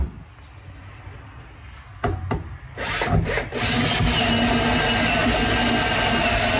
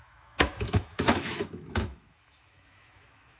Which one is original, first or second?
first